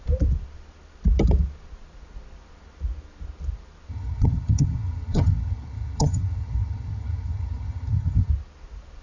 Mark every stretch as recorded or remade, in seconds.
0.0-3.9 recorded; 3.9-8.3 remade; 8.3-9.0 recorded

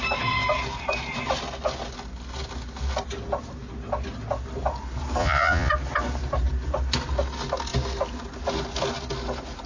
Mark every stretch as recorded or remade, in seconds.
0.0-5.2 recorded; 5.2-5.7 remade; 5.7-9.7 recorded

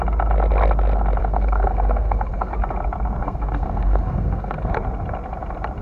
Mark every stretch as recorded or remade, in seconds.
0.0-1.2 recorded; 1.2-2.5 remade; 2.5-3.2 recorded; 3.2-4.7 remade; 4.7-5.8 recorded

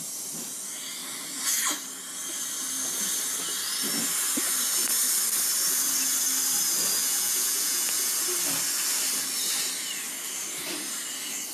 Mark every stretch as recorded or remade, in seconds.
0.0-7.0 recorded; 7.0-8.1 remade; 8.1-11.5 recorded

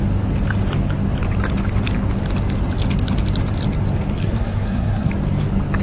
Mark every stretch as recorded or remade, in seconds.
0.0-4.2 recorded; 4.2-5.1 remade; 5.1-5.8 recorded

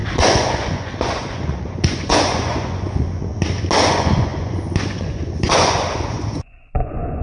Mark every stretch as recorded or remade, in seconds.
0.0-3.3 remade; 3.3-3.9 recorded; 3.9-7.2 remade